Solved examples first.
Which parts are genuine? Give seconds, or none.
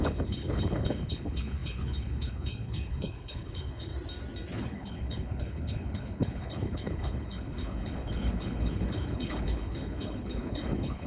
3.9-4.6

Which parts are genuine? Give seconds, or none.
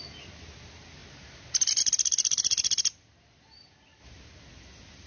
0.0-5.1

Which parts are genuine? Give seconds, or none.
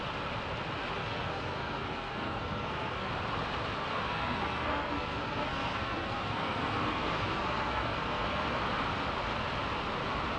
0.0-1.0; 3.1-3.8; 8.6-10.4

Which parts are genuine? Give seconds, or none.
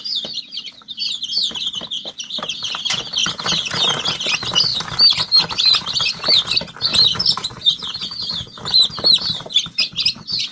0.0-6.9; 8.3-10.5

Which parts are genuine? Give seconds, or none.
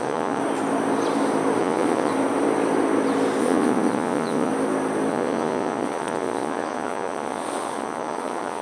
0.4-1.6; 2.1-3.4; 4.5-5.1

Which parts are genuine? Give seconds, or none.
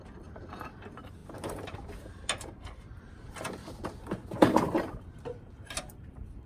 none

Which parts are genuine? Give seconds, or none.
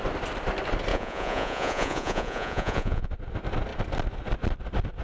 0.0-0.9; 3.1-5.0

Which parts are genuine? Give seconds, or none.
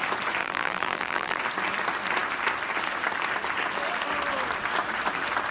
0.0-0.4; 1.4-5.5